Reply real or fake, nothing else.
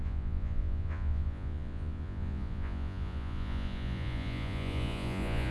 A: fake